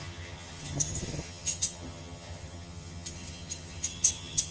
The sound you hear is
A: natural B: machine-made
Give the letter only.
B